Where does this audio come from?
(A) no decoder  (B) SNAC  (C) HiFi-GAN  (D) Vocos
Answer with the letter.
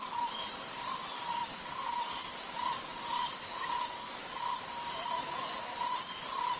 A